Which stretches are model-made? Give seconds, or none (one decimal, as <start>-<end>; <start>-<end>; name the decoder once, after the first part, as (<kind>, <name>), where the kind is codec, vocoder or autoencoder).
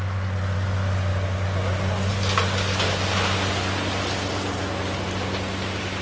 none